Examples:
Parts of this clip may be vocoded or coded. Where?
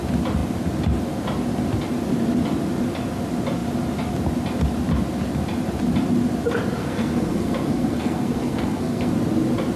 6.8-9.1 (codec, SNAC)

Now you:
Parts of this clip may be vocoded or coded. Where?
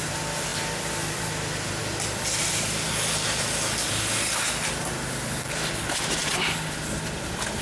none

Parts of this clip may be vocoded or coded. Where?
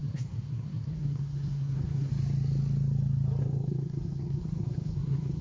0.0-2.1 (codec, SNAC); 3.4-5.4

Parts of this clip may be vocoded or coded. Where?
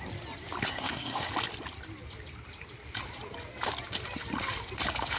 0.7-1.3 (codec, SNAC)